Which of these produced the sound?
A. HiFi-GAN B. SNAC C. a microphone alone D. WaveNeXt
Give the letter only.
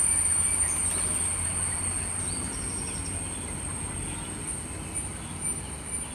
C